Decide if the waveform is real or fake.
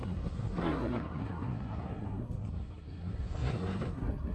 fake